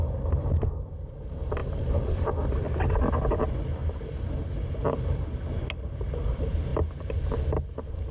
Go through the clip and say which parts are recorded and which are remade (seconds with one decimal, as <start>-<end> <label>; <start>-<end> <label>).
0.0-1.6 recorded; 1.6-2.7 remade; 2.7-8.1 recorded